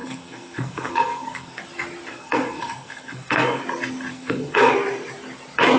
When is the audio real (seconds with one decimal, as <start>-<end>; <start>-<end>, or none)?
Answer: 1.6-2.1; 3.6-4.1; 4.7-5.8